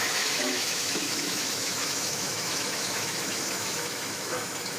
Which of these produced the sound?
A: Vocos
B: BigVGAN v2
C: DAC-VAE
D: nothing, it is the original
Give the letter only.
C